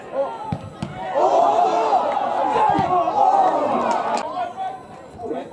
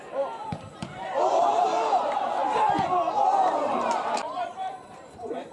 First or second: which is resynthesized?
second